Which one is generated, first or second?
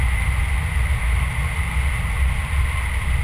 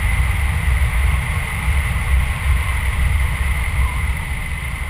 second